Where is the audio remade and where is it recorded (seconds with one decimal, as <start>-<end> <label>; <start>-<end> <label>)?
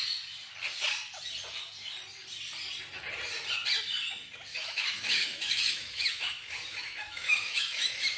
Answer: 0.0-4.5 recorded; 4.5-8.2 remade